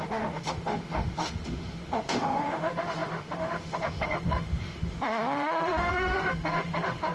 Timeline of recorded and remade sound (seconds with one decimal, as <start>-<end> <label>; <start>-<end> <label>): 0.0-7.1 remade